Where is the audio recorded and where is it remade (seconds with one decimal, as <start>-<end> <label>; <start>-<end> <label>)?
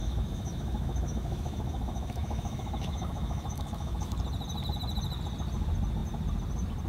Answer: 0.0-4.1 remade; 4.1-6.9 recorded